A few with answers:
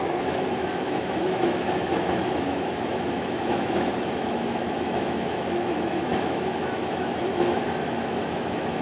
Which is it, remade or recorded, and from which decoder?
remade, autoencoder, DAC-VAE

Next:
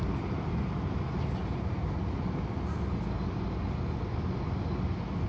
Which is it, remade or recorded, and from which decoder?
recorded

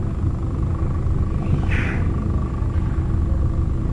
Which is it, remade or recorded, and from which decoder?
recorded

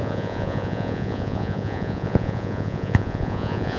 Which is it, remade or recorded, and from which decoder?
remade, vocoder, Vocos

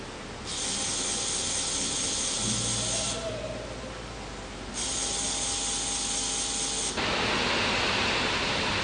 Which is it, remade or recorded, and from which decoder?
recorded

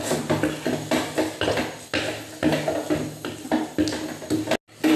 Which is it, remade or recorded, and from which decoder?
recorded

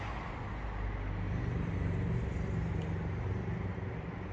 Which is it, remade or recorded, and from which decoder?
recorded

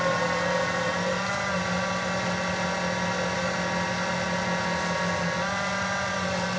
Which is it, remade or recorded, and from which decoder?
recorded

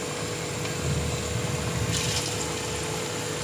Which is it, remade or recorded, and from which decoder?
recorded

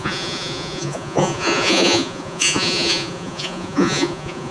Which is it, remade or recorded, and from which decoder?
remade, vocoder, Vocos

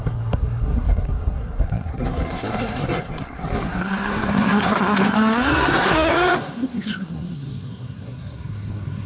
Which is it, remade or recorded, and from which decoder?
remade, codec, SNAC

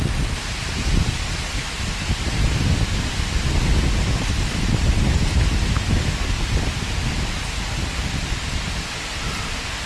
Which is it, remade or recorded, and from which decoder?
recorded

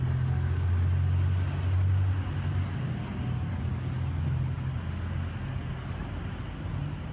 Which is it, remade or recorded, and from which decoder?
recorded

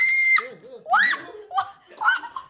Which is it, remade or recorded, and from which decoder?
recorded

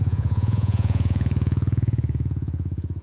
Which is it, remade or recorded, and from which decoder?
remade, vocoder, Vocos